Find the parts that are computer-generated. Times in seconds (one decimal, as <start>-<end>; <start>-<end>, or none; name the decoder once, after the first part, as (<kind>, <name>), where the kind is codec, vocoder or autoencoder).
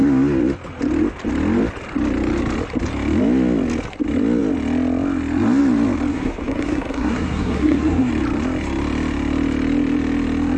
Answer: 6.1-8.1 (codec, SNAC)